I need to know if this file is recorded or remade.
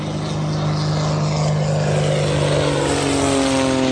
recorded